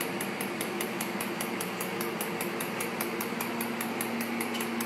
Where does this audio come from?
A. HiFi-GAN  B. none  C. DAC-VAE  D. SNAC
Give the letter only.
B